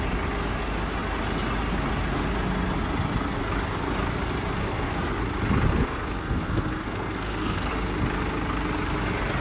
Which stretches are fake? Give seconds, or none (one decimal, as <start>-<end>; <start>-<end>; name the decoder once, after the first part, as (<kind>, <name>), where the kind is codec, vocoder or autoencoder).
4.6-5.1 (codec, SNAC); 5.7-7.7